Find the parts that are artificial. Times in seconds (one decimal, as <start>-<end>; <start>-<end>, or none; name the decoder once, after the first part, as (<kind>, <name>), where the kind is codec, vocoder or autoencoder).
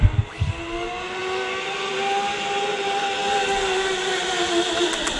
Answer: none